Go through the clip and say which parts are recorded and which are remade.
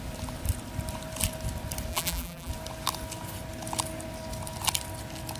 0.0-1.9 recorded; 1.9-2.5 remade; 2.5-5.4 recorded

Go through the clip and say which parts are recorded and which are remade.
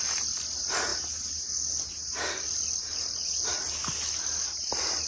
0.0-5.1 recorded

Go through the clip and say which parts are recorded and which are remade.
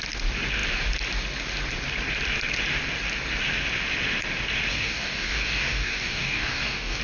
0.0-4.7 recorded; 4.7-7.0 remade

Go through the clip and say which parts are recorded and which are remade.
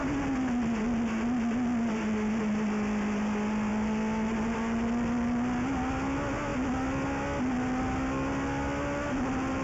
0.0-9.6 recorded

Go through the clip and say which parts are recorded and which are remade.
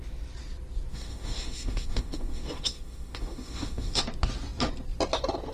0.0-0.9 recorded; 0.9-4.0 remade; 4.0-5.5 recorded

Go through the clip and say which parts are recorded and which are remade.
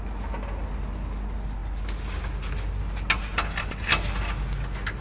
0.0-5.0 recorded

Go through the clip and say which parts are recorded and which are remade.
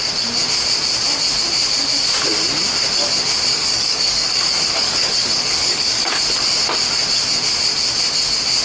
0.0-3.5 recorded; 3.5-6.2 remade; 6.2-8.6 recorded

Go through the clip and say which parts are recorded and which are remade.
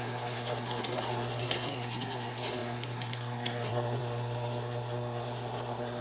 0.0-6.0 remade